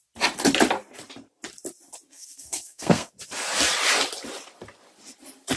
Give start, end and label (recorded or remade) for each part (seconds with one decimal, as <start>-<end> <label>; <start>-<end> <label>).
0.0-2.1 recorded; 2.1-3.1 remade; 3.1-5.6 recorded